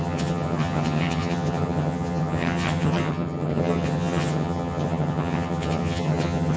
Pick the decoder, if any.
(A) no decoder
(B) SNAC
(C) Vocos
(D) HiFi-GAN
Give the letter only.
D